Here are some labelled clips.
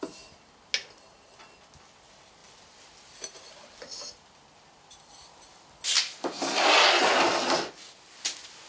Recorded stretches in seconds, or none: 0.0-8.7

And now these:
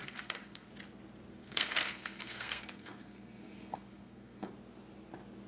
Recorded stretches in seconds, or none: 0.7-1.4; 4.5-5.5

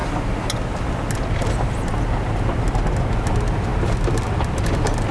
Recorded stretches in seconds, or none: 0.0-5.1